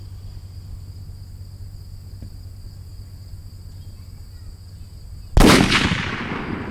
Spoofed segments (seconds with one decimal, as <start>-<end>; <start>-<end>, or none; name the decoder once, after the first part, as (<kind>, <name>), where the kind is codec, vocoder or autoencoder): none